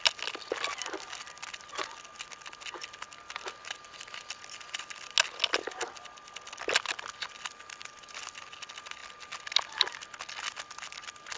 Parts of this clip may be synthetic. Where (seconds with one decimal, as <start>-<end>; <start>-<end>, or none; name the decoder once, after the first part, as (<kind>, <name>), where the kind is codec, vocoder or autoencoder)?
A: none